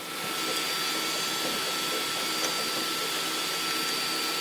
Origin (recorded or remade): recorded